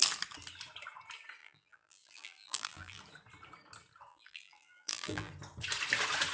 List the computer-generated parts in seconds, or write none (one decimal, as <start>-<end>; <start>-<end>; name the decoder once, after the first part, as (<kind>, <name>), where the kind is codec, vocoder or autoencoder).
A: 1.4-3.0 (vocoder, BigVGAN v2); 4.1-5.3